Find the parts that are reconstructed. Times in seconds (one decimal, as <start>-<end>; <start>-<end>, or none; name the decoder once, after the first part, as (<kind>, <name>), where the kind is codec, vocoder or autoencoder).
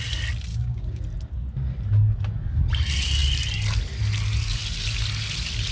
0.5-1.0 (codec, DAC)